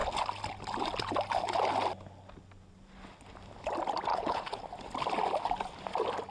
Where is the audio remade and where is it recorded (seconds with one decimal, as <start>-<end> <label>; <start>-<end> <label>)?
0.0-4.1 recorded; 4.1-4.6 remade; 4.6-6.3 recorded